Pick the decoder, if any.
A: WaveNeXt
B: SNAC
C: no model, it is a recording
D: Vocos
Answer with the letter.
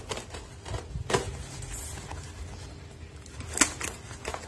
C